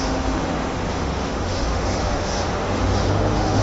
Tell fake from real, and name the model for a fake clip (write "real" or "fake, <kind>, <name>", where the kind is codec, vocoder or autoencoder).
fake, autoencoder, DAC-VAE